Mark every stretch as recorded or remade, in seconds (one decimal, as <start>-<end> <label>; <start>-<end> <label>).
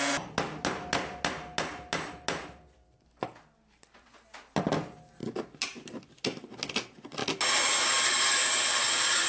0.0-9.3 recorded